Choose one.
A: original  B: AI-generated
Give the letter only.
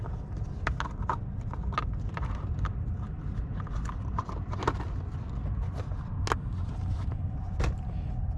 A